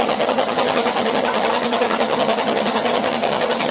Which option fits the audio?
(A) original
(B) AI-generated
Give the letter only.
B